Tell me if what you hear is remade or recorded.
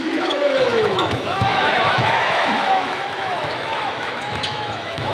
remade